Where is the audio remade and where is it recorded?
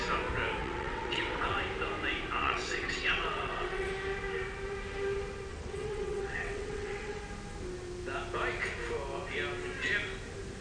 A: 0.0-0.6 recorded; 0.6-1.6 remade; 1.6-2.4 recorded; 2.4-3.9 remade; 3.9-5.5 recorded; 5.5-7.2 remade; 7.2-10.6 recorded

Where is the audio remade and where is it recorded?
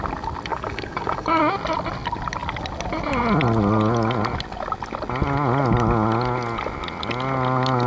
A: 0.0-0.5 recorded; 0.5-1.4 remade; 1.4-7.9 recorded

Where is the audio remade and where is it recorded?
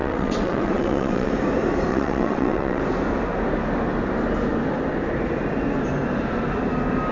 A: 0.0-1.3 remade; 1.3-1.9 recorded; 1.9-2.8 remade; 2.8-7.1 recorded